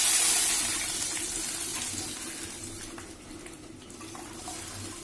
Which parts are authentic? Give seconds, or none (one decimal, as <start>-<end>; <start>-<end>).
0.0-5.0